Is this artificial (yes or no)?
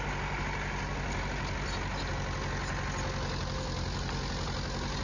no